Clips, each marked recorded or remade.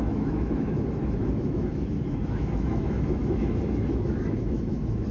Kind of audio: remade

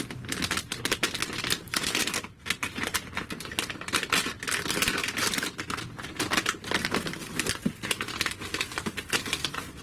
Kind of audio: recorded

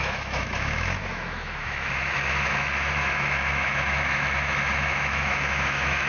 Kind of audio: remade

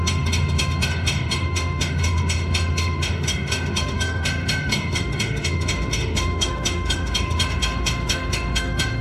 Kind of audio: remade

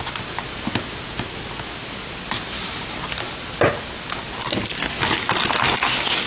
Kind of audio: recorded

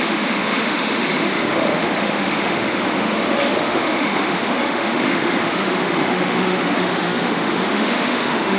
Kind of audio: remade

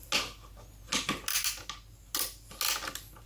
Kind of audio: recorded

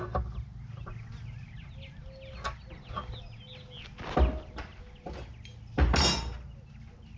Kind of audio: recorded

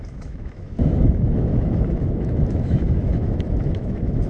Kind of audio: remade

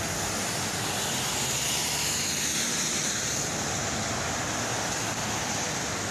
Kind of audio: recorded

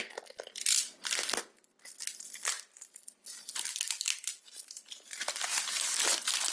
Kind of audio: recorded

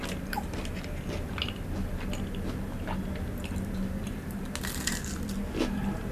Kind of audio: recorded